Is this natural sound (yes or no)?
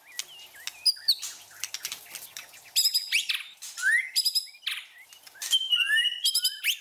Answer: yes